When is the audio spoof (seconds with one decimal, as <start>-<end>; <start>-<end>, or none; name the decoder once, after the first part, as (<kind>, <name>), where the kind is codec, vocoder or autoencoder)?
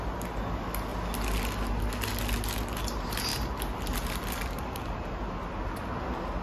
none